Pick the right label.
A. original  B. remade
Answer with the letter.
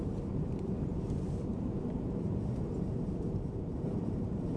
B